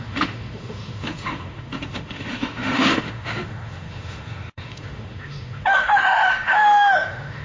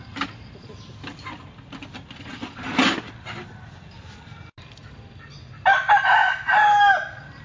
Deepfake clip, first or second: first